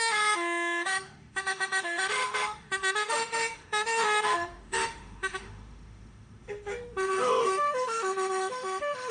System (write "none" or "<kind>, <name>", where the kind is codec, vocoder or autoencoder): autoencoder, DAC-VAE